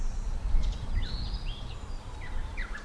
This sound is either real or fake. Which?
fake